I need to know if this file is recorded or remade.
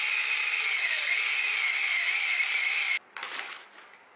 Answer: recorded